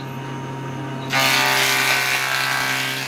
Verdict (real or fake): real